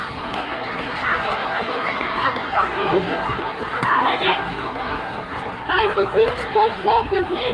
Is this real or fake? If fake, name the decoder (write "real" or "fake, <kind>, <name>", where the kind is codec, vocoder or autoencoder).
fake, codec, SNAC